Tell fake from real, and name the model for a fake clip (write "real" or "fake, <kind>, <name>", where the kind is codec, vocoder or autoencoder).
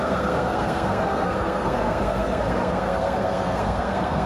fake, codec, SNAC